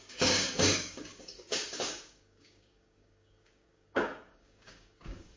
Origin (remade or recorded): remade